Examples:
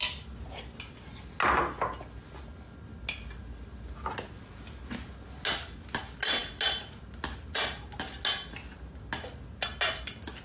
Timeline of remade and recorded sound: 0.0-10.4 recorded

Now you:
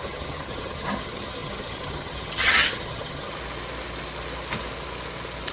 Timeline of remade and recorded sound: 0.0-3.3 remade; 3.3-5.5 recorded

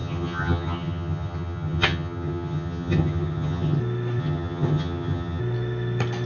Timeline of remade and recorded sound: 0.0-3.8 remade; 3.8-4.2 recorded; 4.2-5.4 remade; 5.4-6.3 recorded

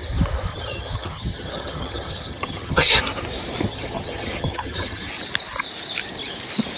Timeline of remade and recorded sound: 0.0-0.5 recorded; 0.5-3.0 remade; 3.0-3.7 recorded; 3.7-5.1 remade; 5.1-6.8 recorded

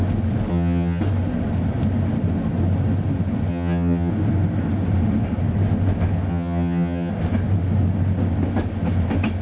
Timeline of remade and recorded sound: 0.0-0.5 recorded; 0.5-1.0 remade; 1.0-3.5 recorded; 3.5-4.1 remade; 4.1-6.3 recorded; 6.3-7.1 remade; 7.1-9.4 recorded

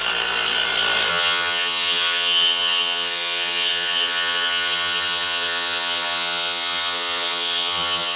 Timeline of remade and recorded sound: 0.0-1.1 recorded; 1.1-8.2 remade

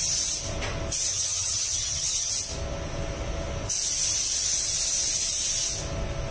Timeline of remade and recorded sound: 0.0-1.1 recorded; 1.1-2.3 remade; 2.3-6.3 recorded

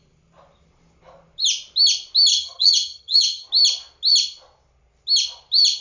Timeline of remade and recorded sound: 0.0-2.3 recorded; 2.3-3.5 remade; 3.5-5.8 recorded